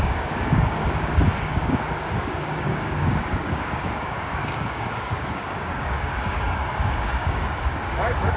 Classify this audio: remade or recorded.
remade